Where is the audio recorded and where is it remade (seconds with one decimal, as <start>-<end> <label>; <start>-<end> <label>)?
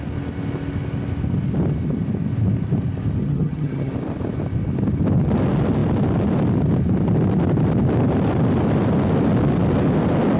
0.0-3.2 recorded; 3.2-3.9 remade; 3.9-10.4 recorded